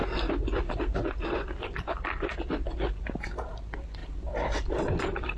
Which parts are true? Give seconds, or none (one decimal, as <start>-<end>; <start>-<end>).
0.0-5.4